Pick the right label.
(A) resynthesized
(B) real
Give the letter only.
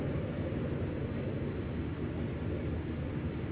B